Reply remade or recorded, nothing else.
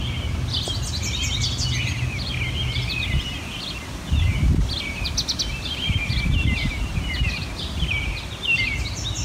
recorded